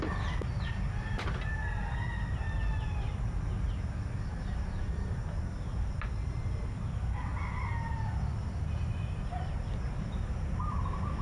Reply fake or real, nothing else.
real